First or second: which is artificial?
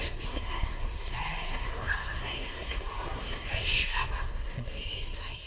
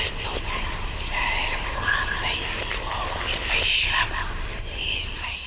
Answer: first